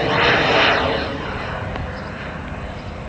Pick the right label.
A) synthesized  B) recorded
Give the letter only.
B